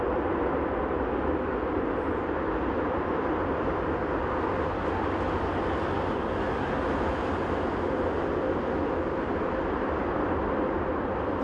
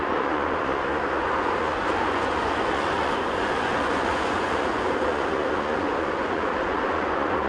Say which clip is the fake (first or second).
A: second